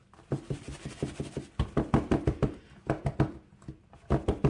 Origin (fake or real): real